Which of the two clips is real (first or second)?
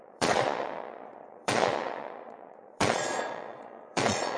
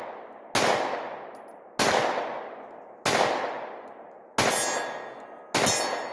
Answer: second